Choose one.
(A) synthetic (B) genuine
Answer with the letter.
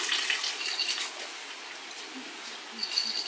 B